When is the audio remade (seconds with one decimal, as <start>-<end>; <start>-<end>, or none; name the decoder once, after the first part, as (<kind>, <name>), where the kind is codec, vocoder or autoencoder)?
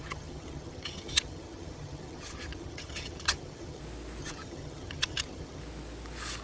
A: 0.0-3.8 (vocoder, HiFi-GAN); 4.2-5.6